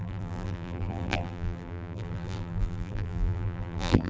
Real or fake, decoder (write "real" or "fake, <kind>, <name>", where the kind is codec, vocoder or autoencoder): fake, vocoder, BigVGAN v2